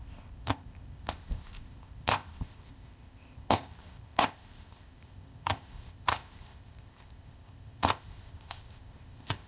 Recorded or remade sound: remade